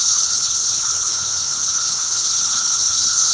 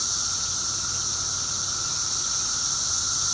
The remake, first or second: first